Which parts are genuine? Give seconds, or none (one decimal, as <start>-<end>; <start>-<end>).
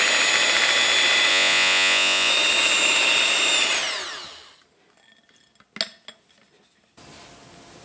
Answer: 0.0-1.3; 2.3-7.8